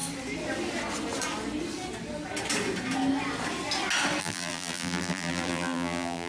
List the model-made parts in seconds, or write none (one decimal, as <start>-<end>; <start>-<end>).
4.2-6.3